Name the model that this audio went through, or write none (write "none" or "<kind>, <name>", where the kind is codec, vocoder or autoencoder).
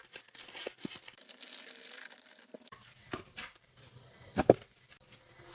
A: vocoder, BigVGAN v2